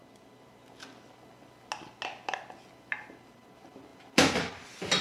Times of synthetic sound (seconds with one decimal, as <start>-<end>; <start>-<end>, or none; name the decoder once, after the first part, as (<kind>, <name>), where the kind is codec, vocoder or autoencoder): none